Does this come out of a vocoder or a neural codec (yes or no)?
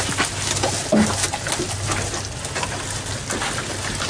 no